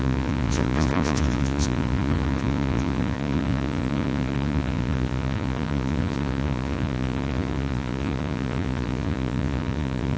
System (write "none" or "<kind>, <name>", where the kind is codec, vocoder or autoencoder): vocoder, Vocos